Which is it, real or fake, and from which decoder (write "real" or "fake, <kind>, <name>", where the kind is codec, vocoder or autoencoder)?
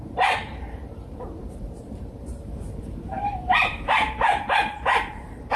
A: fake, vocoder, BigVGAN v2